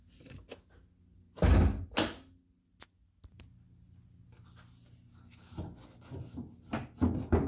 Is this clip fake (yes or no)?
no